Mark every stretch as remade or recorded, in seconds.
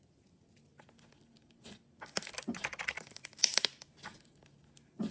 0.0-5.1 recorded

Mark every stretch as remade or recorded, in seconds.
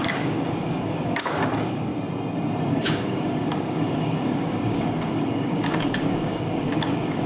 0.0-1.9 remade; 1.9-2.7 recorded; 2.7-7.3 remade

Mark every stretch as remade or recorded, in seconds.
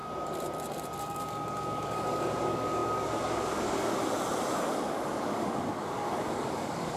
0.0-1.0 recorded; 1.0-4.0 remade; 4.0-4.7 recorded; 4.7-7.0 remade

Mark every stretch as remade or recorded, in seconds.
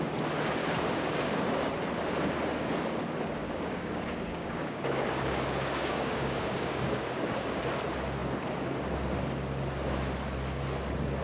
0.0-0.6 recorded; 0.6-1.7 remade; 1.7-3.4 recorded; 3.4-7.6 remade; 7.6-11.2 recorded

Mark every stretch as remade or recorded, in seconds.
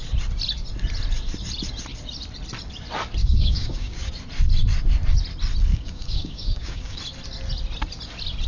0.0-3.2 recorded; 3.2-4.1 remade; 4.1-5.7 recorded; 5.7-7.0 remade; 7.0-8.5 recorded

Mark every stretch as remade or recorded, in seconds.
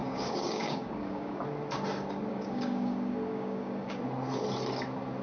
0.0-1.4 remade; 1.4-2.3 recorded; 2.3-4.0 remade; 4.0-5.2 recorded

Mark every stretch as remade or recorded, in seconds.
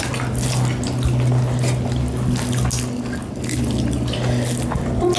0.0-5.2 recorded